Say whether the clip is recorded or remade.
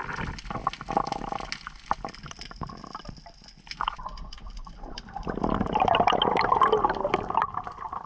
recorded